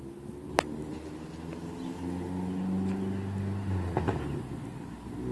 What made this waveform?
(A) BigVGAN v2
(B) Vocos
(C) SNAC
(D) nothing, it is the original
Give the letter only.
D